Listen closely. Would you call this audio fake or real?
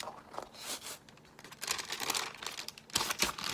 real